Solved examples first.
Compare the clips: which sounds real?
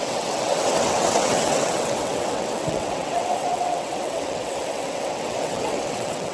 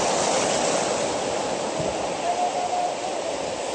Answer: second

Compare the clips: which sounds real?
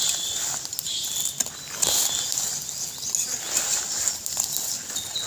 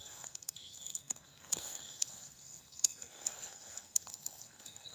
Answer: first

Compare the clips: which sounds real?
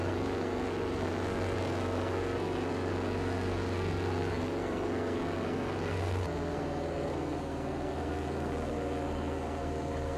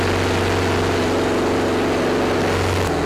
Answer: second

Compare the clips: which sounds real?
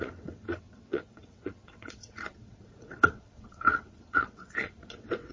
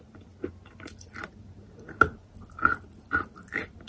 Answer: second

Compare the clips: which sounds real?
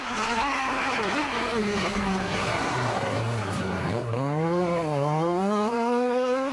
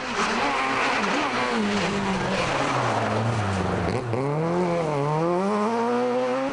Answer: second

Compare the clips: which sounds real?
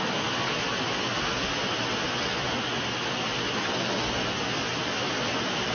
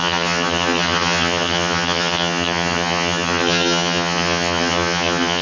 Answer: first